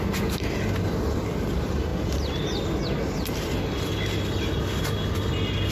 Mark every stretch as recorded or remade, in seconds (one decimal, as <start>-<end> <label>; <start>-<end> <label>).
0.0-5.7 recorded